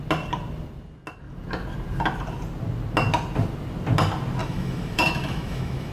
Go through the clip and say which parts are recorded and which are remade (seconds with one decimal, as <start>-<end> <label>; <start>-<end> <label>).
0.0-4.4 recorded; 4.4-5.9 remade